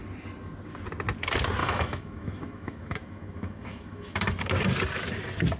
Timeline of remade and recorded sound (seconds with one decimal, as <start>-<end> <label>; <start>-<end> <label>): 0.0-1.6 recorded; 1.6-4.3 remade; 4.3-5.6 recorded